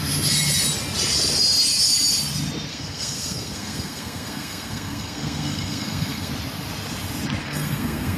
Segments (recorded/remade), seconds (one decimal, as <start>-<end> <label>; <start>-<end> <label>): 0.0-2.7 recorded; 2.7-6.3 remade; 6.3-7.4 recorded; 7.4-8.2 remade